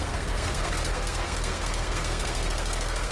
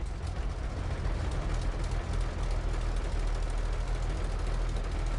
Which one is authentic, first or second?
second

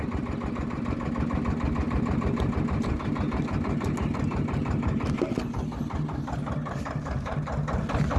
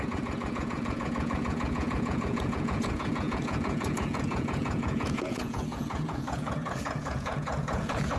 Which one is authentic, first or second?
first